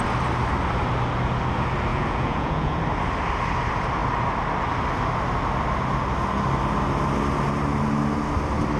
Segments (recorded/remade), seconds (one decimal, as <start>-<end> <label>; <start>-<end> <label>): 0.0-1.9 recorded; 1.9-2.8 remade; 2.8-8.8 recorded

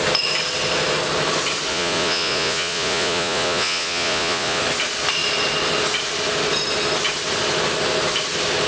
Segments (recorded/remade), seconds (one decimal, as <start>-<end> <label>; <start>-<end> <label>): 0.0-1.7 recorded; 1.7-4.6 remade; 4.6-8.7 recorded

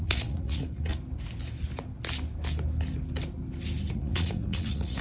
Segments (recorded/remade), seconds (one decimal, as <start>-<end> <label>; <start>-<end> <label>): 0.0-0.9 remade; 0.9-3.9 recorded; 3.9-5.0 remade

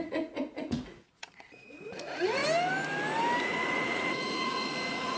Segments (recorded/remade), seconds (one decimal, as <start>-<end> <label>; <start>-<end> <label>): 0.0-2.4 remade; 2.4-3.4 recorded; 3.4-5.2 remade